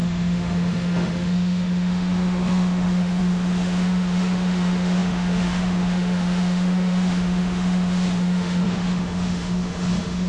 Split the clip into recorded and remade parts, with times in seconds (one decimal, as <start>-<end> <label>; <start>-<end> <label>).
0.0-10.3 remade